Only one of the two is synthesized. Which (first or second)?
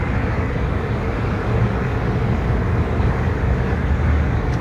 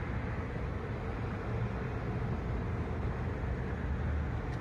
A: first